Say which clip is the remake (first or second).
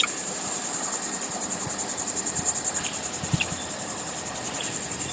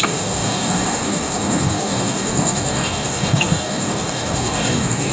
second